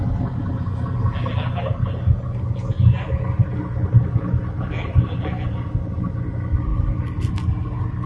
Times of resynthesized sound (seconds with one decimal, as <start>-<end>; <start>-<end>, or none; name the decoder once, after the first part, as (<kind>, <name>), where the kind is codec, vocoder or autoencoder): none